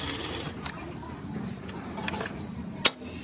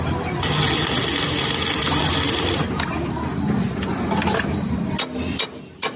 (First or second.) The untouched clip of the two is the second